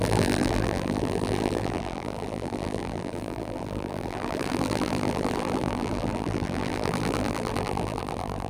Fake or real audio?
fake